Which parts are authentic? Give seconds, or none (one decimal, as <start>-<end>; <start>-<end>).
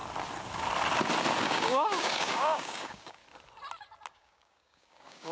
0.0-1.4; 3.2-4.1